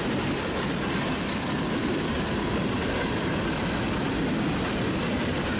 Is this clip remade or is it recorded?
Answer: recorded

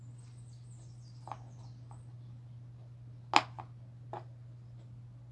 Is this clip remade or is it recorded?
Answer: recorded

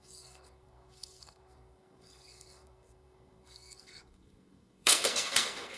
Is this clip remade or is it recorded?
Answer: remade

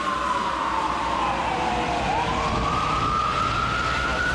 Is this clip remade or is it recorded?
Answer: remade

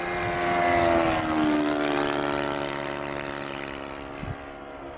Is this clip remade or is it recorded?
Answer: recorded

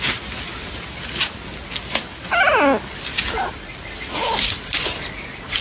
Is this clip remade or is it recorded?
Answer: recorded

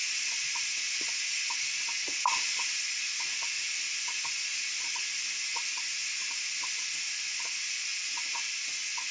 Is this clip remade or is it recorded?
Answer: recorded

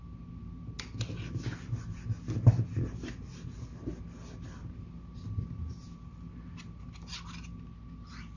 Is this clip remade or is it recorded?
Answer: recorded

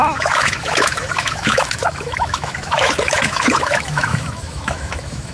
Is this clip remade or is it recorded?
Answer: remade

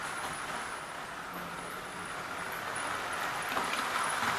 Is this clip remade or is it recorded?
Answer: recorded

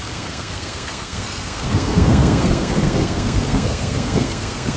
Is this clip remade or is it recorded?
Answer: remade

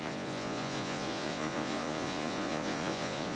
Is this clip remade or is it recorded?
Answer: remade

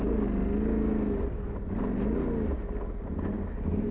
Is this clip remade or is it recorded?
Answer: recorded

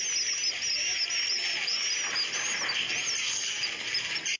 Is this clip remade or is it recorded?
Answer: recorded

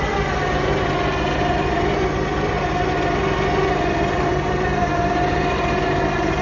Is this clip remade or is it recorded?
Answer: recorded